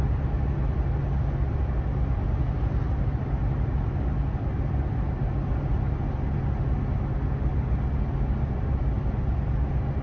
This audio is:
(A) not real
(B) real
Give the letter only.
B